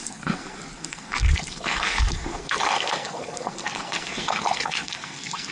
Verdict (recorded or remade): remade